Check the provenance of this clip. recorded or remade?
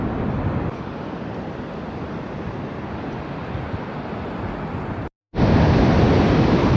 recorded